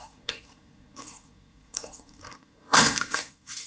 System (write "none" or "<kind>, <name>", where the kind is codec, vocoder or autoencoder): codec, SNAC